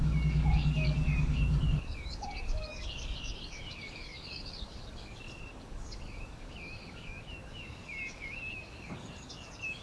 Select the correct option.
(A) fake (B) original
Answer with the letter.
A